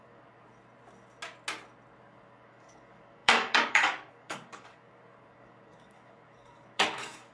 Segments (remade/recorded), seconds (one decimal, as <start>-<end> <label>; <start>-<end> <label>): 0.0-0.5 remade; 0.5-2.0 recorded; 2.0-7.3 remade